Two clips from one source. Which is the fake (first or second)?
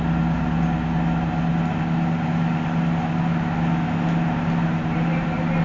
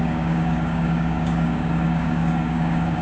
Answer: second